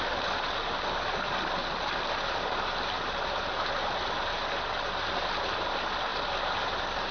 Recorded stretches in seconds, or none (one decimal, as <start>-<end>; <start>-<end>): 0.0-7.1

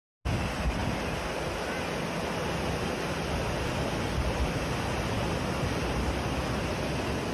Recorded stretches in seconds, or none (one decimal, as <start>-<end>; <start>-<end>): 0.0-7.3

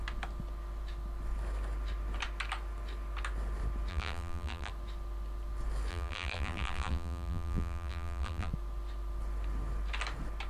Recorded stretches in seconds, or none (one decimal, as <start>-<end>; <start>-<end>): 0.0-3.9; 4.7-5.9; 8.5-10.5

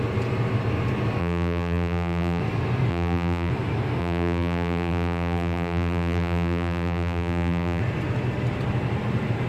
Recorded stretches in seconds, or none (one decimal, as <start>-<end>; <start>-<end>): 0.0-1.2; 2.4-2.9; 3.5-4.0; 7.8-9.5

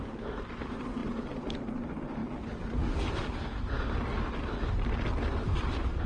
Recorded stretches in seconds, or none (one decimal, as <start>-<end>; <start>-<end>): 0.0-1.0; 1.7-6.1

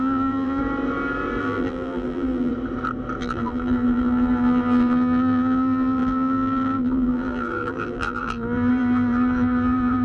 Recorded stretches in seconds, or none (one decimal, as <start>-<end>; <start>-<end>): 0.6-1.4; 2.5-3.2